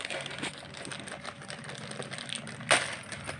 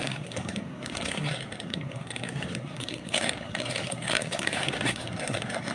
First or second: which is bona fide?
first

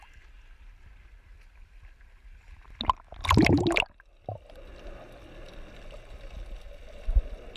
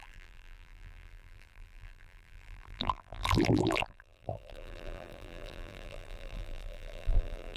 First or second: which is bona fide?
first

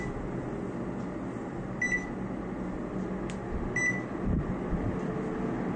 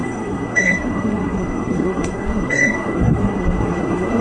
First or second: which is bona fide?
first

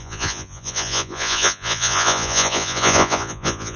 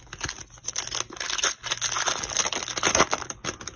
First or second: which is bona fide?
second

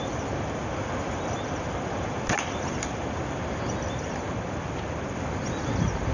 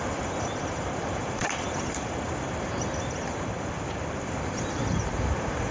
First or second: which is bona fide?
first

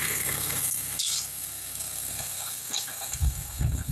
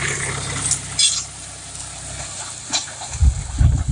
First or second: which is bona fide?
second